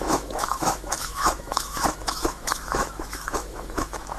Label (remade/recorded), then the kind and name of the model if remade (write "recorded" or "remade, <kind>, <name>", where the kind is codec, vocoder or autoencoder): remade, autoencoder, DAC-VAE